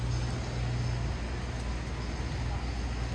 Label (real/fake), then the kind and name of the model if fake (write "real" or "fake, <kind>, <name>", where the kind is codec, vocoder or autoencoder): real